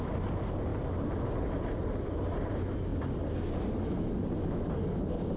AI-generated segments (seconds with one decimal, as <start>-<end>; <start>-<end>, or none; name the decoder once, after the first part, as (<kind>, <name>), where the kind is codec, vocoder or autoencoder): 2.9-3.5 (vocoder, BigVGAN v2)

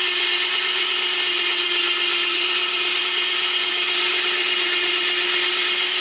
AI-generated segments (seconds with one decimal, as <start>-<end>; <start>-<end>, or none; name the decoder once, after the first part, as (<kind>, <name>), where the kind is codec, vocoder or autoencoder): none

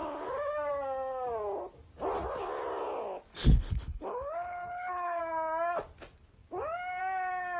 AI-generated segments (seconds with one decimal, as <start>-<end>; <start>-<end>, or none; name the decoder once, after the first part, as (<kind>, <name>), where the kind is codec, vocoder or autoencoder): 3.3-5.2 (codec, HILCodec)

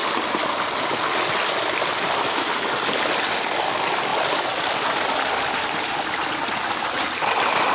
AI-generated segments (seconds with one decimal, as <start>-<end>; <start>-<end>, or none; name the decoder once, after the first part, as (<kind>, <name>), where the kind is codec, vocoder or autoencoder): 4.1-6.8 (vocoder, BigVGAN v2)